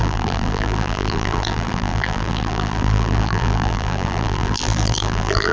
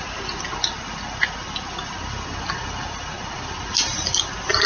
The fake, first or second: first